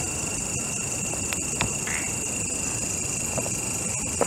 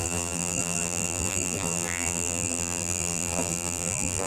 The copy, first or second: second